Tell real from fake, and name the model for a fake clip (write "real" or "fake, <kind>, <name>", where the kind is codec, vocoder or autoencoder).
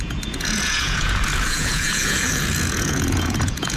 fake, vocoder, Vocos